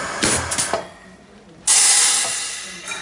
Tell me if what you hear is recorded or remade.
recorded